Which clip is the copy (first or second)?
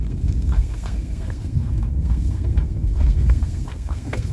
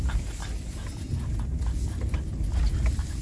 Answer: first